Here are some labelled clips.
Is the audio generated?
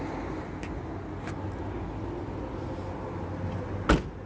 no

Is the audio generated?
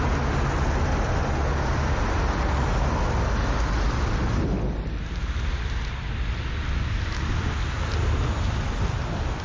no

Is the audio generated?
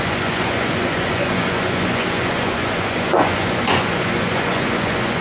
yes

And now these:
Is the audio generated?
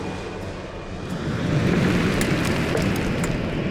no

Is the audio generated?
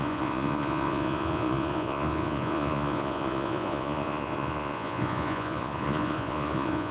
yes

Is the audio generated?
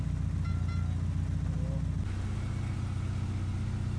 no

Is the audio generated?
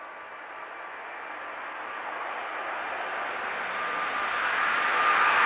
no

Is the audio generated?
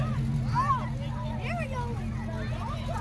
no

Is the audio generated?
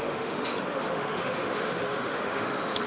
yes